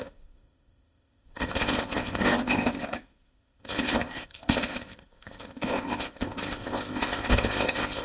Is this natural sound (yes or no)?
no